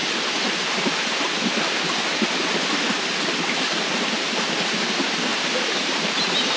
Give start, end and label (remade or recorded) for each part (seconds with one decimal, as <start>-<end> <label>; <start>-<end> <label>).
0.0-5.3 recorded; 5.3-6.6 remade